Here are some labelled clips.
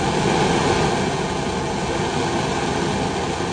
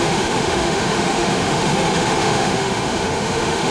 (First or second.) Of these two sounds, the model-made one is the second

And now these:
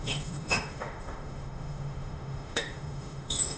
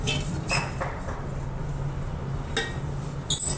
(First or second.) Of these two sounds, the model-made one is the first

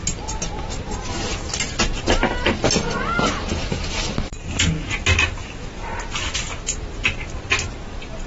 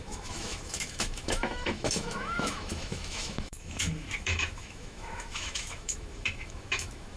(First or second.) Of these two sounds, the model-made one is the second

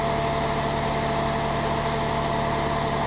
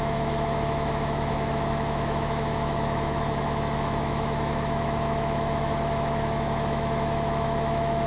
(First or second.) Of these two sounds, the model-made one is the second